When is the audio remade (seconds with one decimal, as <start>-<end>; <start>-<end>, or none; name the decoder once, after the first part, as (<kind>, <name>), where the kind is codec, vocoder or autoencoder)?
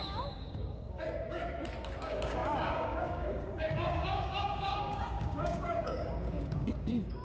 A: 0.0-1.4 (codec, DAC); 2.0-7.2